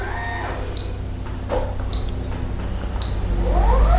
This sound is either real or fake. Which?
real